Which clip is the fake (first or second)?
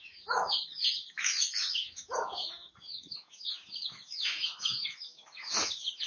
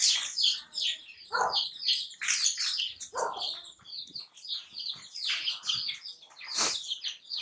first